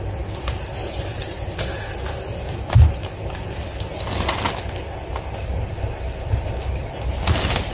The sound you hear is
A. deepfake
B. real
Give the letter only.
B